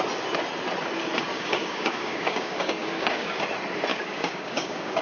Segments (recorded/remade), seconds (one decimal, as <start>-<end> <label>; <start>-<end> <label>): 0.0-1.3 recorded; 1.3-3.4 remade; 3.4-3.9 recorded; 3.9-5.0 remade